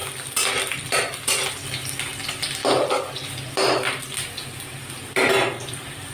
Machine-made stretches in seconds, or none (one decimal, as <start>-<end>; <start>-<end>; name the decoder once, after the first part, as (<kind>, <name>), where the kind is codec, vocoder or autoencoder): none

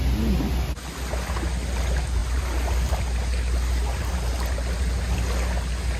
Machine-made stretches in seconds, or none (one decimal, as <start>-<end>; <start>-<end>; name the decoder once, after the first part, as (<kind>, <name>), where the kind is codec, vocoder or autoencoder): none

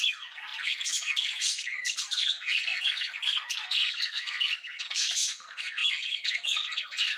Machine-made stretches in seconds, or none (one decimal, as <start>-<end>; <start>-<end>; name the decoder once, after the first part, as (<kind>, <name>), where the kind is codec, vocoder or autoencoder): 0.0-7.2 (codec, SNAC)

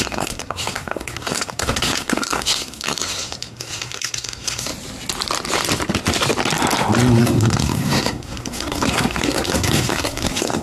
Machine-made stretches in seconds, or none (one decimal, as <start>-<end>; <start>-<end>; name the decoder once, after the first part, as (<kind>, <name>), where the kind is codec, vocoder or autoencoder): 0.0-4.7 (codec, SNAC); 7.2-10.6

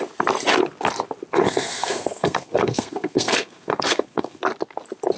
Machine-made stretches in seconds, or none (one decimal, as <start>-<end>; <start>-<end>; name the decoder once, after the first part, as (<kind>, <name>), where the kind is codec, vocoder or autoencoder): 1.3-4.4 (codec, SNAC)

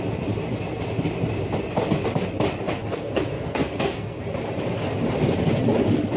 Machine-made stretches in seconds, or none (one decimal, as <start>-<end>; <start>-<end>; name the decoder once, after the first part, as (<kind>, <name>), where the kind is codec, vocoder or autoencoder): 2.8-4.2 (codec, SNAC)

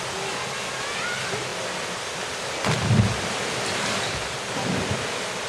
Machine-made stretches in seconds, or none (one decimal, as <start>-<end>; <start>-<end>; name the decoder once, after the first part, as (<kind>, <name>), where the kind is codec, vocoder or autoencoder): none

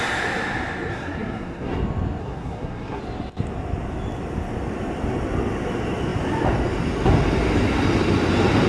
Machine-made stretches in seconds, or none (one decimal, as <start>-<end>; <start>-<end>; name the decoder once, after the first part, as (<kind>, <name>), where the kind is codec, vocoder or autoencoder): 0.9-1.7 (codec, SNAC); 2.2-3.0